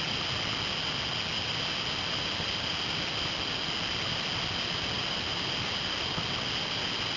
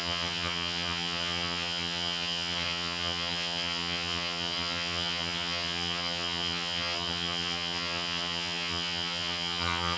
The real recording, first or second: first